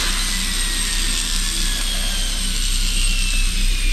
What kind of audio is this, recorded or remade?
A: recorded